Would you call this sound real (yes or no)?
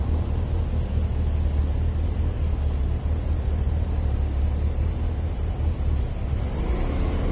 yes